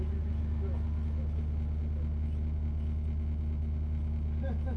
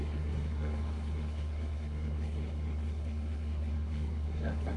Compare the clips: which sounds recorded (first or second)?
first